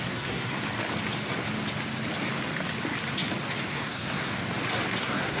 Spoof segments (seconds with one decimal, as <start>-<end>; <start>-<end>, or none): 0.0-0.6; 3.7-4.3; 5.0-5.4